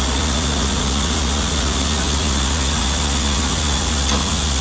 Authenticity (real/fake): fake